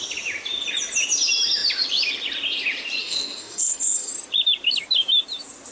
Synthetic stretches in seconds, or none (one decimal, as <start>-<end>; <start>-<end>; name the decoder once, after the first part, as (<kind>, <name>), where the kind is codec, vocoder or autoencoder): 3.0-4.1 (codec, SNAC)